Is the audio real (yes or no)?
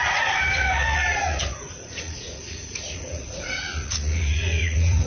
no